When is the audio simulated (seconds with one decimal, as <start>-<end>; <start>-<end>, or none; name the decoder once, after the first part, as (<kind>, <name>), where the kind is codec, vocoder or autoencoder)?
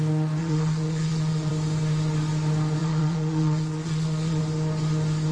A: 0.4-1.5 (vocoder, Vocos); 2.8-4.4